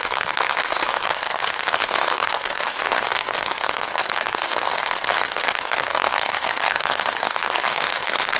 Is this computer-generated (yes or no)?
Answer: yes